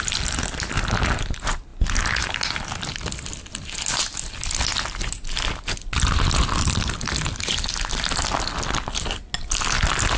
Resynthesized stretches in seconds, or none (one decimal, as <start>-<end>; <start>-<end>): none

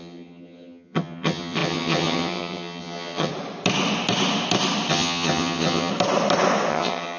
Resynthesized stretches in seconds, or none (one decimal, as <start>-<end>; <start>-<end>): 0.0-3.3; 4.9-5.9; 6.7-7.2

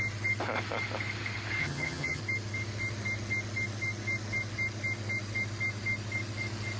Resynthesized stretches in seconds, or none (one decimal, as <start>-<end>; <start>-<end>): 1.6-2.2

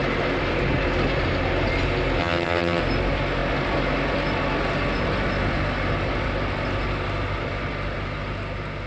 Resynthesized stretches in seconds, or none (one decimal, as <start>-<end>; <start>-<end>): 2.2-2.8

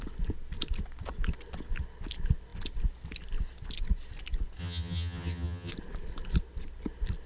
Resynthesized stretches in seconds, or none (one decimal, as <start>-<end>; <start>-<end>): 4.6-5.7

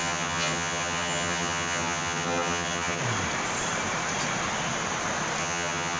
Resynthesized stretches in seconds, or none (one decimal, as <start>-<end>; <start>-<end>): 0.0-3.0; 5.4-6.0

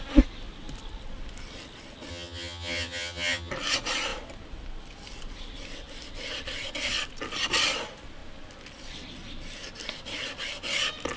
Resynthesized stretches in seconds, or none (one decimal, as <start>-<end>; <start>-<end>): 2.1-3.5

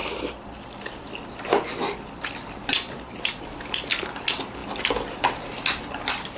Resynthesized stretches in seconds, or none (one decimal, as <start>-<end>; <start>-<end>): none